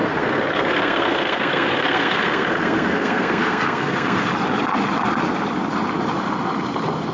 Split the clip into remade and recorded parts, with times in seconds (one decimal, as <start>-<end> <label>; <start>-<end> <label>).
0.0-4.3 remade; 4.3-7.1 recorded